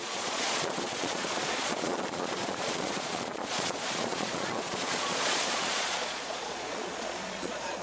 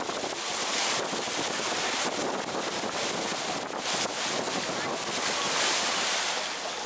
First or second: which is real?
second